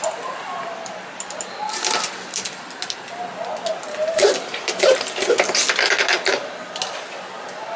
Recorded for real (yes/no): yes